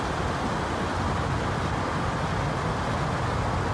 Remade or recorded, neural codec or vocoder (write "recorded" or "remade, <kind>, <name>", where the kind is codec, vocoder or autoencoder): recorded